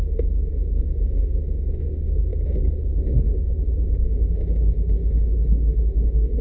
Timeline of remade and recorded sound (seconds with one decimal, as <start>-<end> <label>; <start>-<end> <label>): 0.0-6.4 remade